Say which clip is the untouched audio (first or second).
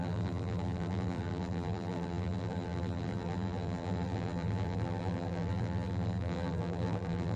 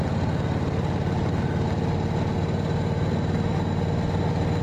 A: second